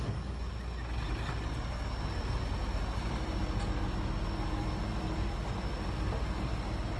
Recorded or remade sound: recorded